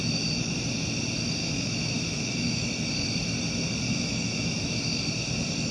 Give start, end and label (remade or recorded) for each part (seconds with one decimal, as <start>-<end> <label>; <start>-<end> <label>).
0.0-1.4 recorded; 1.4-2.6 remade; 2.6-3.9 recorded; 3.9-4.6 remade; 4.6-5.7 recorded

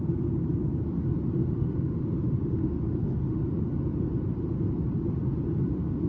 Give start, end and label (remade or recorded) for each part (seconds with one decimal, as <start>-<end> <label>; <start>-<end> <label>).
0.0-1.4 recorded; 1.4-3.4 remade; 3.4-6.1 recorded